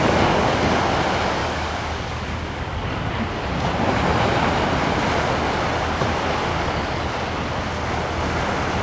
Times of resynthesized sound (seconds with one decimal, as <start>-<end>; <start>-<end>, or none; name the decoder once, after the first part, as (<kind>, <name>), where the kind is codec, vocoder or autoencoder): 0.0-0.8 (codec, DAC); 1.4-3.1; 6.5-7.1